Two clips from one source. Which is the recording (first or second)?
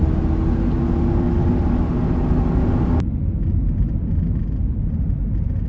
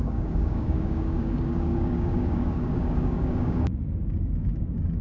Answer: first